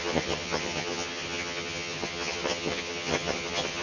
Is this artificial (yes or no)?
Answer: yes